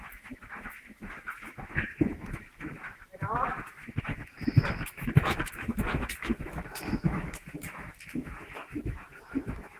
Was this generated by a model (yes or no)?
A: yes